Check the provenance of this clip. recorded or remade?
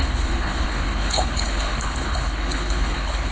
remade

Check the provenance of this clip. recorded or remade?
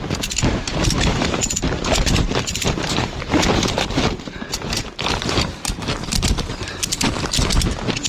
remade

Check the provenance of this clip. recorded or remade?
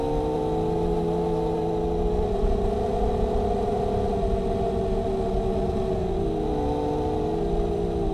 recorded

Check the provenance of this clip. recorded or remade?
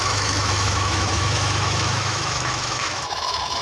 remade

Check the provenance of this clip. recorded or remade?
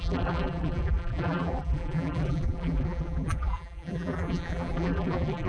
remade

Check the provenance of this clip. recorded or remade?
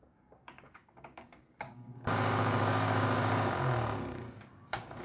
remade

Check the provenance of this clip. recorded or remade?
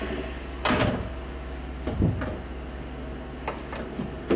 recorded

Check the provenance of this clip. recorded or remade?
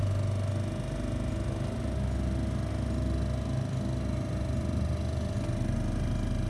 recorded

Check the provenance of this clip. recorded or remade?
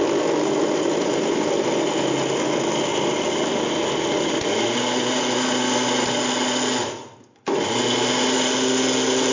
recorded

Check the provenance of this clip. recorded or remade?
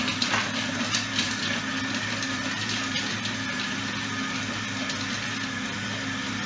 recorded